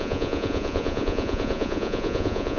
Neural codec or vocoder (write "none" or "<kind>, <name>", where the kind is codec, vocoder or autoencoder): vocoder, Vocos